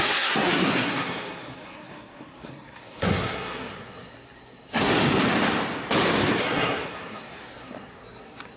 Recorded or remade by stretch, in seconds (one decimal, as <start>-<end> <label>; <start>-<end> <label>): 0.0-4.9 remade; 4.9-6.4 recorded; 6.4-8.6 remade